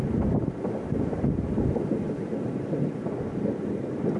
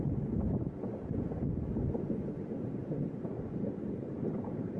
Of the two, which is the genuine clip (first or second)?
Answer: first